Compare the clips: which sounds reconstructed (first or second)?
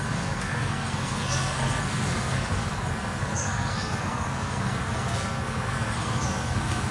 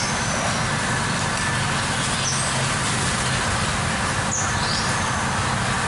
first